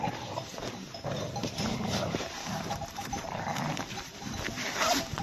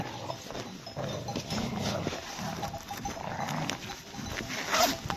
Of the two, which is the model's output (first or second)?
first